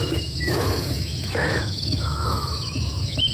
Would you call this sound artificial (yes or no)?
yes